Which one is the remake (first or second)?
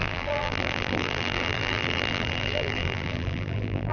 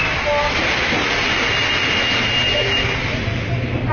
first